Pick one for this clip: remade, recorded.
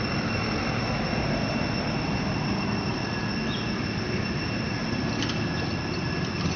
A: recorded